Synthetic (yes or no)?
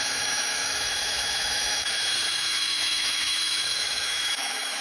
yes